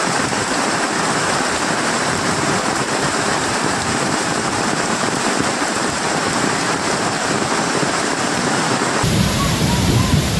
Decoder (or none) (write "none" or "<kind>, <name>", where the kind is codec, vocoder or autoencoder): vocoder, BigVGAN v2